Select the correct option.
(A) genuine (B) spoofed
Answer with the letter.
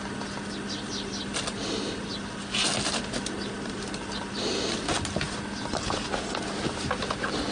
A